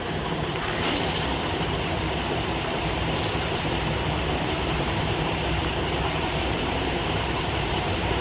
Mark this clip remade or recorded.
remade